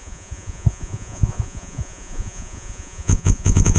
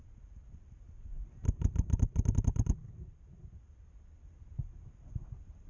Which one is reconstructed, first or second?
first